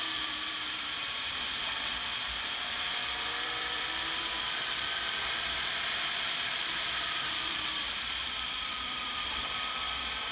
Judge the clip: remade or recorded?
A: remade